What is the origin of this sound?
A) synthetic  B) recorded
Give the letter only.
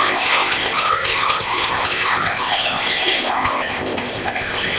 A